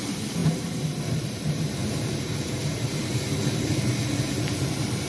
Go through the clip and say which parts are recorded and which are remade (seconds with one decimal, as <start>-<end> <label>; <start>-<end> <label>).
0.0-5.1 remade

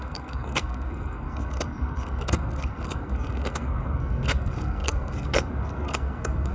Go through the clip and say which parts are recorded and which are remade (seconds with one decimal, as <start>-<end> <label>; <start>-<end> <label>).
0.0-6.5 remade